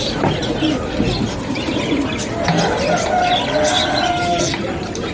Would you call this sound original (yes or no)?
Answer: yes